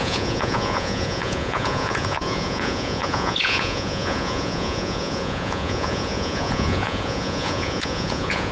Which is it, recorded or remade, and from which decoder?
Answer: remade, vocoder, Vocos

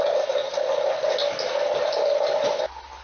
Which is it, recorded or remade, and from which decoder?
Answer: recorded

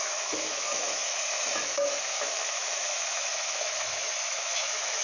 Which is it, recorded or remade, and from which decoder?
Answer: remade, autoencoder, DAC-VAE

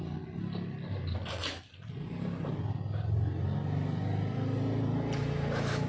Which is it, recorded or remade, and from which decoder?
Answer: recorded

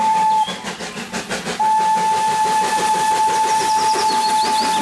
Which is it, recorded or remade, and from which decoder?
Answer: recorded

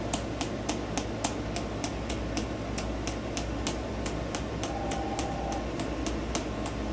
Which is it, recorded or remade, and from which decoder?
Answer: recorded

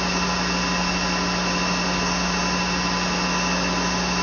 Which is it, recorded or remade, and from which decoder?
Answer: recorded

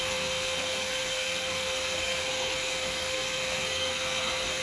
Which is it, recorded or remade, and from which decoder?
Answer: remade, codec, SNAC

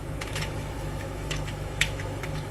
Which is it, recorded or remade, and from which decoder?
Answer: remade, autoencoder, DAC-VAE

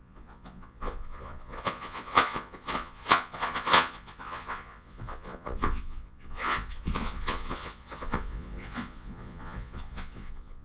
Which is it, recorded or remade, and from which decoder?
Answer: remade, vocoder, Vocos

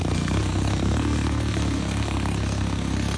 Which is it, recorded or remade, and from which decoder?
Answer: remade, codec, SNAC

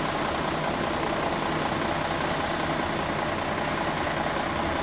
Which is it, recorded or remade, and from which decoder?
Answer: recorded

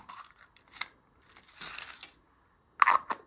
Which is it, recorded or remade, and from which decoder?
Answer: recorded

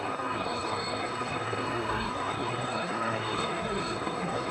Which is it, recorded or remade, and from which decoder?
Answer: remade, codec, SNAC